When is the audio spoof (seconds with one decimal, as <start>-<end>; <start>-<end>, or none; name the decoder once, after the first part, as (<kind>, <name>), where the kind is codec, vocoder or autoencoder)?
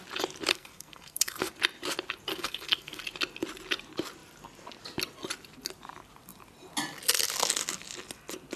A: 0.5-1.5 (codec, SNAC); 2.3-3.0